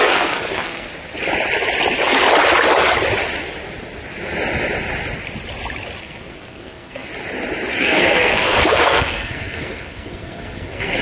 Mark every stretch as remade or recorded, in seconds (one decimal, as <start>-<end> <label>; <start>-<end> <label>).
0.0-0.9 remade; 0.9-6.0 recorded; 6.0-7.1 remade; 7.1-7.8 recorded; 7.8-11.0 remade